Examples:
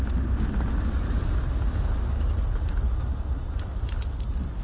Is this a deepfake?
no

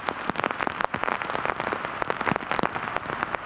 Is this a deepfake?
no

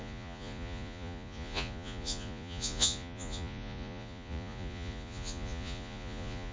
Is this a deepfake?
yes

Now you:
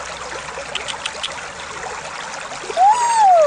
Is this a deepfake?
no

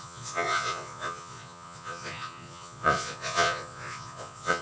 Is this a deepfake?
yes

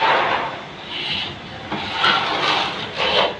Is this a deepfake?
no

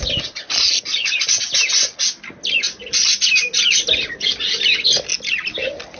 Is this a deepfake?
no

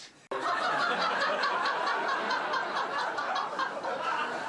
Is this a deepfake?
no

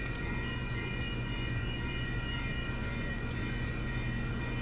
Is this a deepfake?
yes